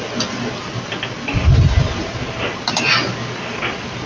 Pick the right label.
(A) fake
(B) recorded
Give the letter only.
B